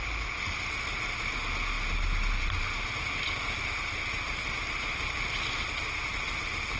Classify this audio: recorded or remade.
recorded